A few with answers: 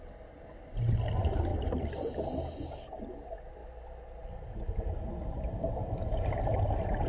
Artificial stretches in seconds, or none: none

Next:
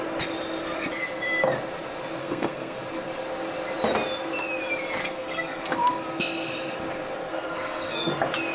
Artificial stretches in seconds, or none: 2.2-2.8 (codec, SNAC); 5.0-5.9; 7.3-8.1

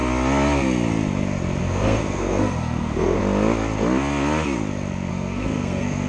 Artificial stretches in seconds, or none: 1.6-3.2 (codec, SNAC); 5.1-6.1

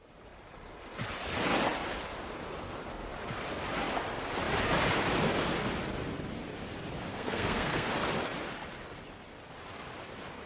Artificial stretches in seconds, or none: 7.1-7.9 (codec, SNAC)

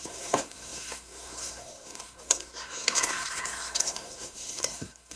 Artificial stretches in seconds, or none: 0.0-5.2 (codec, SNAC)

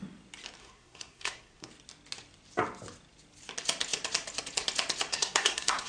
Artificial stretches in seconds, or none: 0.6-1.7 (codec, SNAC); 5.1-5.9

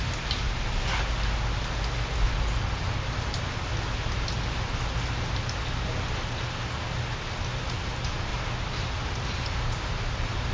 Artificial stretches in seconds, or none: none

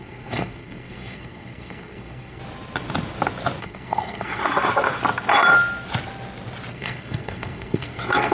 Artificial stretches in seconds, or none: 0.0-2.4 (codec, SNAC); 3.6-4.4; 6.7-8.3